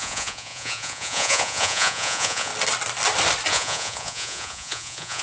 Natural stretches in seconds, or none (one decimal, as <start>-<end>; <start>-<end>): 2.5-3.5